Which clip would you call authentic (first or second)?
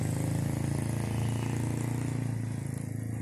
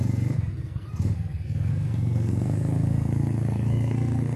first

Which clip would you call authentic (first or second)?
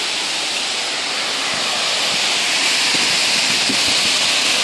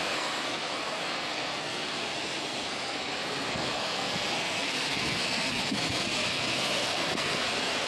first